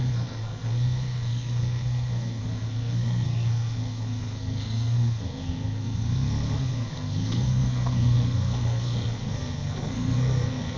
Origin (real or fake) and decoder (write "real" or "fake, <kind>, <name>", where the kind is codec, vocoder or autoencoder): fake, codec, SNAC